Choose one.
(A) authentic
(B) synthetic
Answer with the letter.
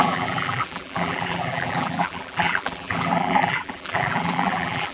B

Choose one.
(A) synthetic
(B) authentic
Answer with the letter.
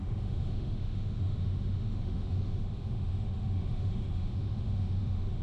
A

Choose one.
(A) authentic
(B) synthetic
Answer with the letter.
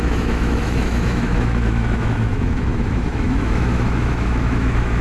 B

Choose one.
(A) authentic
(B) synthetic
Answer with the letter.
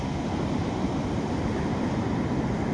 A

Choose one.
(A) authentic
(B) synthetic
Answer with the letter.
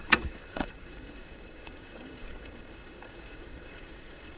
B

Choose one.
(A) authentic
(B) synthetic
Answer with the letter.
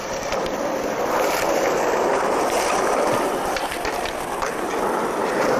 B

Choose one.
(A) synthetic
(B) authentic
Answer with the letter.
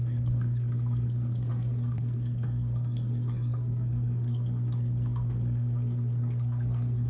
A